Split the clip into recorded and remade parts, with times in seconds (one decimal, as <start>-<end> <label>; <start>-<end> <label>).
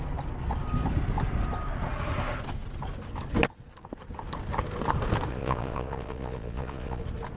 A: 0.0-5.3 recorded; 5.3-7.0 remade; 7.0-7.4 recorded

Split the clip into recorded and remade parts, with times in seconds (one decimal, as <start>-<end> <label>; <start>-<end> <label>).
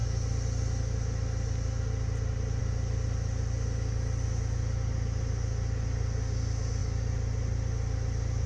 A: 0.0-8.5 recorded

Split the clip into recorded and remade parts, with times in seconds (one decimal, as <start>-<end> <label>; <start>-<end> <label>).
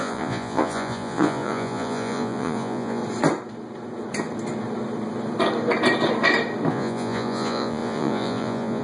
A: 0.0-3.0 remade; 3.0-6.7 recorded; 6.7-8.8 remade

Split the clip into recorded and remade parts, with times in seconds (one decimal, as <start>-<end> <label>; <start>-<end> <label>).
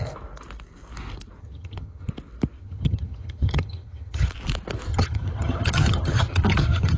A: 0.0-1.4 recorded; 1.4-2.1 remade; 2.1-2.6 recorded; 2.6-4.3 remade; 4.3-4.9 recorded; 4.9-7.0 remade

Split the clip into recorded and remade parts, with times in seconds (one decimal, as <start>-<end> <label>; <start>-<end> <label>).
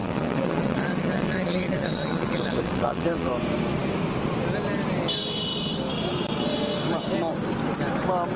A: 0.0-3.3 remade; 3.3-8.4 recorded